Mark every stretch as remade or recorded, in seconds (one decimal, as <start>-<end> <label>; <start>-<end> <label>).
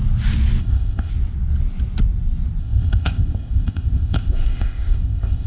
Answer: 0.0-0.6 recorded; 0.6-1.1 remade; 1.1-2.6 recorded; 2.6-5.5 remade